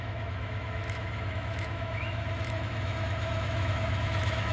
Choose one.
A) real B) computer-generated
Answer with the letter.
B